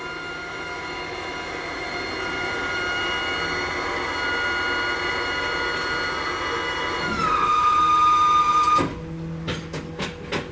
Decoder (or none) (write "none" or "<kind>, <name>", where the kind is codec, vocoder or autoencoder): none